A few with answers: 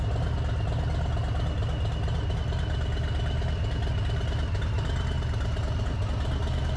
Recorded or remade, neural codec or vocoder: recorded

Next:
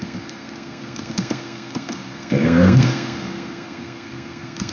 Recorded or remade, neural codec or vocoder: remade, codec, SNAC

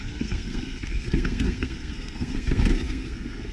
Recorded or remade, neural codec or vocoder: remade, codec, SNAC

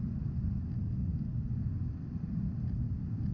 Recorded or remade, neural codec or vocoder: recorded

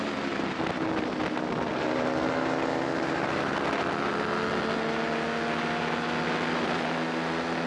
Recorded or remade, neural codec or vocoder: recorded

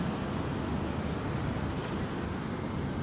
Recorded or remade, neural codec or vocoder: recorded